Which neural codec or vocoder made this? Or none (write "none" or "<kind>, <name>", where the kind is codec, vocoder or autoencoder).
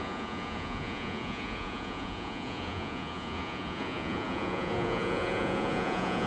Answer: vocoder, Vocos